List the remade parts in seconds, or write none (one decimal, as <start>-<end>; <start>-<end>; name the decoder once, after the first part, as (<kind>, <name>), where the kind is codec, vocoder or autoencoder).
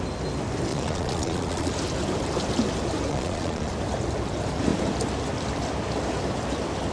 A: 0.7-1.7 (vocoder, Vocos); 3.1-3.7